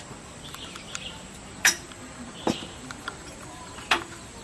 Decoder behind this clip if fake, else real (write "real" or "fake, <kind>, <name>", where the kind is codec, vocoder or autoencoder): fake, vocoder, BigVGAN v2